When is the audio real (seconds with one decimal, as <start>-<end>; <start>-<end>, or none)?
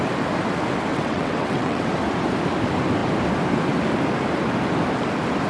0.0-0.9; 1.9-5.5